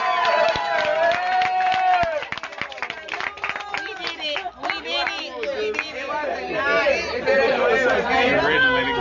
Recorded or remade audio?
recorded